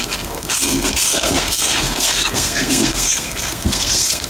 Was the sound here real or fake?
fake